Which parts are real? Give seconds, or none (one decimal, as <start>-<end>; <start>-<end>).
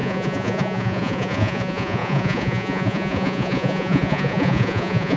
none